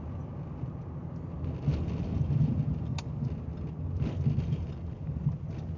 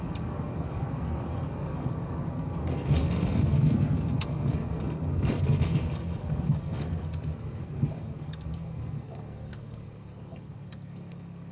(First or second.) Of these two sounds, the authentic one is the first